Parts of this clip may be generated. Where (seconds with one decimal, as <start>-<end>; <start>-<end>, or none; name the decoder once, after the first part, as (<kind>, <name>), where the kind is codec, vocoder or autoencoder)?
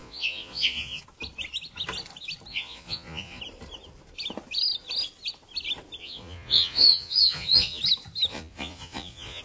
0.0-1.0 (vocoder, Vocos); 2.5-3.4; 6.0-7.8; 8.3-9.4